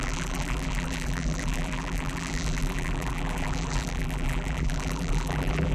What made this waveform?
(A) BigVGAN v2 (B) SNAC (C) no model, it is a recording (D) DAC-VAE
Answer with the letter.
A